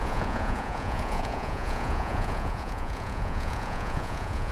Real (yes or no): no